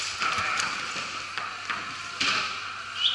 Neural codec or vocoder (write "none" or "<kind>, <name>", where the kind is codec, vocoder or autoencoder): none